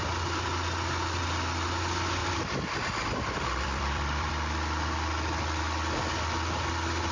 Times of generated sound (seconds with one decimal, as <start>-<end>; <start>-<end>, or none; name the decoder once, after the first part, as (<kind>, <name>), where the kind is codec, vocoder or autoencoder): 2.2-4.3 (vocoder, BigVGAN v2)